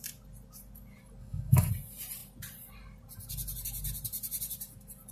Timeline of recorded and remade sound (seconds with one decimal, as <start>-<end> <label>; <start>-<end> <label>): 0.0-1.2 recorded; 1.2-1.7 remade; 1.7-5.1 recorded